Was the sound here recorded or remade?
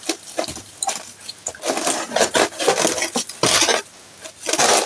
recorded